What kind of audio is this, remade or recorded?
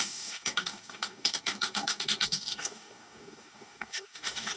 remade